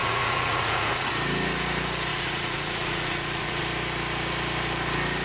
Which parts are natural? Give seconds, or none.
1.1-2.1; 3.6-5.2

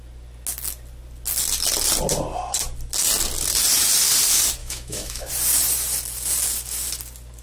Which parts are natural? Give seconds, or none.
0.0-4.6; 5.3-7.4

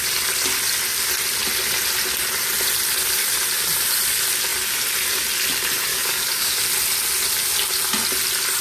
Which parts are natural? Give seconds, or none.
0.0-5.9; 6.6-8.6

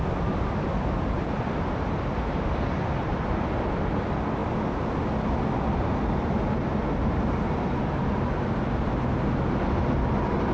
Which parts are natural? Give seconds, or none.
0.0-10.5

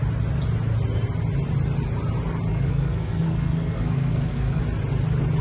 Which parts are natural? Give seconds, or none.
0.0-2.5; 4.6-5.4

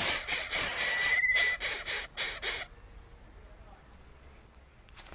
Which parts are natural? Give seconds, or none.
0.7-3.8